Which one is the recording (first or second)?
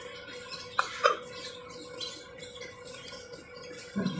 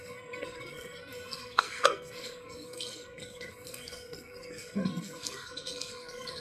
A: first